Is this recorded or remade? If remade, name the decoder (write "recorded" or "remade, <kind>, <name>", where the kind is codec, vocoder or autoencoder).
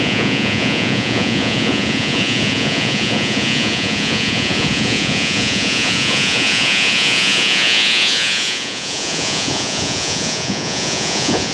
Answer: remade, vocoder, Vocos